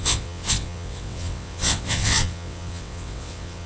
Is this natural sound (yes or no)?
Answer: no